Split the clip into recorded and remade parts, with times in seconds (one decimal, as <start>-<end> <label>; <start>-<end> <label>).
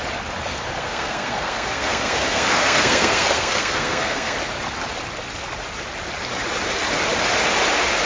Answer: 0.0-0.5 recorded; 0.5-4.4 remade; 4.4-8.1 recorded